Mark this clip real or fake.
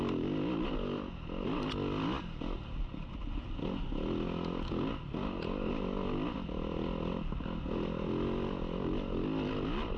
real